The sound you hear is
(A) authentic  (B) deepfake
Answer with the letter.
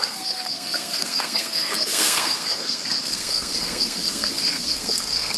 B